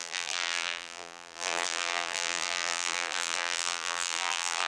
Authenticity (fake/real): fake